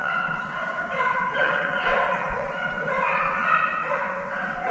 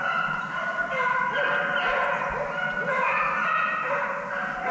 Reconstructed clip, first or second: first